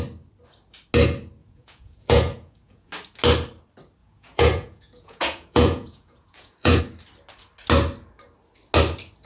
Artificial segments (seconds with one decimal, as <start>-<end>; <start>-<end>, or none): 1.4-2.9; 4.0-6.8